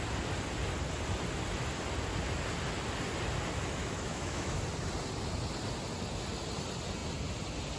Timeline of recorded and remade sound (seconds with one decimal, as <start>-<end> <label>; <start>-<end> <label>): 0.0-3.8 recorded; 3.8-4.6 remade; 4.6-7.8 recorded

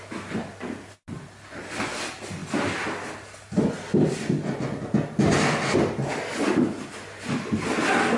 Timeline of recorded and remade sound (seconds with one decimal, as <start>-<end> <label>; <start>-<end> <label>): 0.0-8.2 recorded

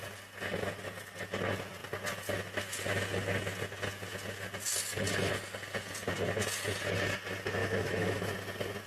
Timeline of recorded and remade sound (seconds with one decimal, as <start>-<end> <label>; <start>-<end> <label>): 0.0-7.6 recorded; 7.6-8.3 remade; 8.3-8.9 recorded